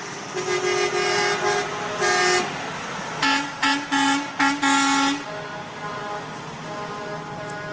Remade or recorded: recorded